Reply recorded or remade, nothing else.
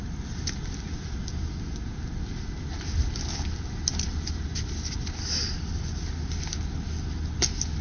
recorded